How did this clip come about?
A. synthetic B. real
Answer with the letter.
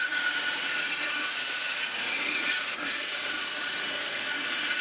A